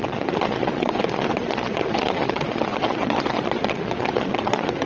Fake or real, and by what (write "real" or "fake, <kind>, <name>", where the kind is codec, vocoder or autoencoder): fake, vocoder, Vocos